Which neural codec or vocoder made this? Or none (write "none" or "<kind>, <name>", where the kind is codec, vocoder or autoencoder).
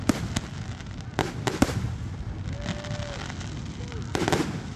none